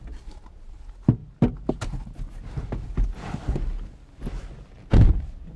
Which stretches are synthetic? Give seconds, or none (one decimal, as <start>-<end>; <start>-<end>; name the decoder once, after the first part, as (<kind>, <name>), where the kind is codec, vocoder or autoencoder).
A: none